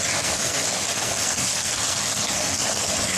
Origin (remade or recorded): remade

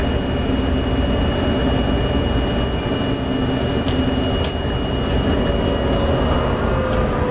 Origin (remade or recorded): recorded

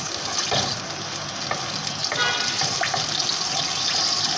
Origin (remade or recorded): recorded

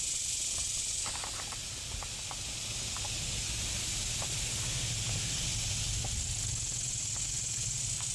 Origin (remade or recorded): recorded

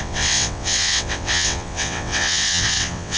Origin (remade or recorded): remade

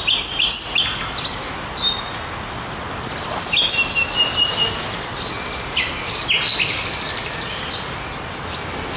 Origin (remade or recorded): recorded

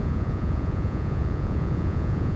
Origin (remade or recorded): remade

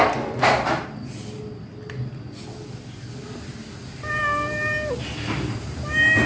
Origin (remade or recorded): recorded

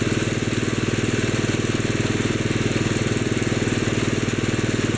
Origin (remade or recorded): recorded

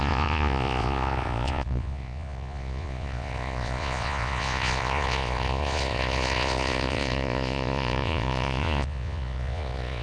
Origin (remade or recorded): remade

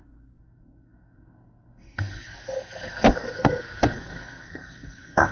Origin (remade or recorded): remade